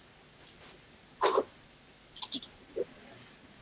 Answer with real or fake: real